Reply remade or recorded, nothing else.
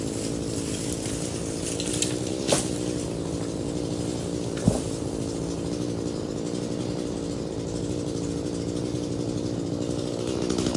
recorded